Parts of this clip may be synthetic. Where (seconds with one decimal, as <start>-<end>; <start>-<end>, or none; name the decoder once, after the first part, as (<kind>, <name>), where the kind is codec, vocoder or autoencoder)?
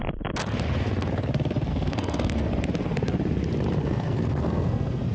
1.7-2.5 (codec, SNAC); 3.8-5.1